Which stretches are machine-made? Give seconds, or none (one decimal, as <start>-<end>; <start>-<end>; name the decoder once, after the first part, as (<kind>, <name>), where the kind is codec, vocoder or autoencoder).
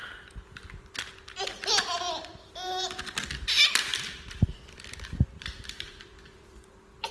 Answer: 3.9-6.6 (vocoder, BigVGAN v2)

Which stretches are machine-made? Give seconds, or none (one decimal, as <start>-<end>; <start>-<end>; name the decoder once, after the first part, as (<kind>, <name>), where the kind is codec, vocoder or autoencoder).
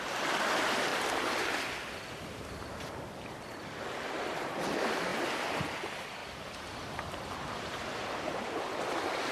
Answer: 0.9-1.6 (vocoder, BigVGAN v2); 5.1-5.6; 6.2-7.8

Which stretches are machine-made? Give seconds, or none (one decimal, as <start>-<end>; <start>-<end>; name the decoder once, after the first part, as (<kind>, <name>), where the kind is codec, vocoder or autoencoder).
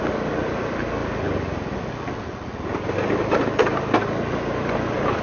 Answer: none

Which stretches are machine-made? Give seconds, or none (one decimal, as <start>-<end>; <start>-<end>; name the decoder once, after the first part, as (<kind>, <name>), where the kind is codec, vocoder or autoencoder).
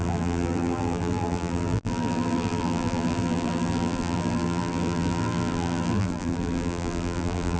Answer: 0.0-7.6 (vocoder, BigVGAN v2)